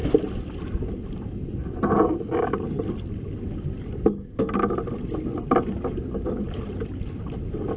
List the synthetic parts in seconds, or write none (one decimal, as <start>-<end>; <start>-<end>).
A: none